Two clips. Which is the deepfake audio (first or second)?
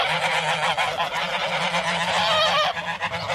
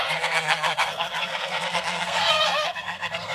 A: second